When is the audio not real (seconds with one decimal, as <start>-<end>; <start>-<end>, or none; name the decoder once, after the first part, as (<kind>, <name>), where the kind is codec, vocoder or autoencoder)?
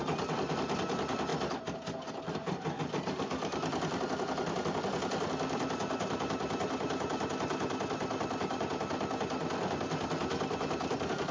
none